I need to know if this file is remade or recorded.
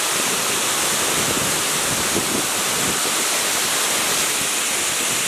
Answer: recorded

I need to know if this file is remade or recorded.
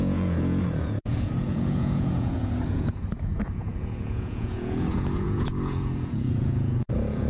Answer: remade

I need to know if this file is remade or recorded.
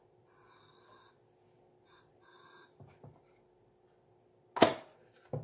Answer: recorded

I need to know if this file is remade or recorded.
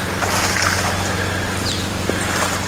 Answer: recorded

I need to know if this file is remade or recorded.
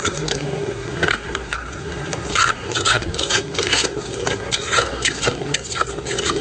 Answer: remade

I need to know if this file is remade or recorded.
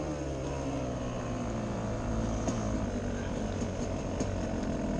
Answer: recorded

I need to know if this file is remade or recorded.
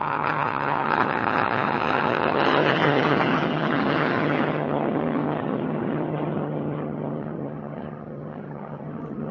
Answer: remade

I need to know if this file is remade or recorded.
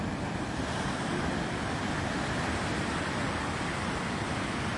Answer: recorded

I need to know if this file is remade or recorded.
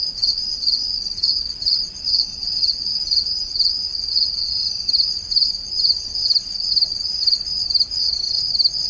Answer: recorded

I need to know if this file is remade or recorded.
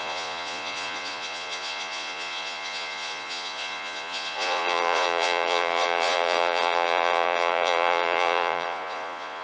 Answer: remade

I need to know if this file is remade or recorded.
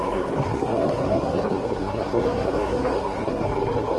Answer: remade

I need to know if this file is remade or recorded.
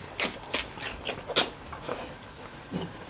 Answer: recorded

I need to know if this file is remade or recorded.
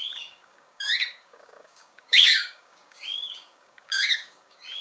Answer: remade